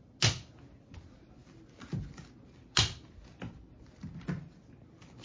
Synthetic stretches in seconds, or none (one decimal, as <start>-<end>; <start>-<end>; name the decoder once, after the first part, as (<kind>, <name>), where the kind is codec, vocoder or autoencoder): none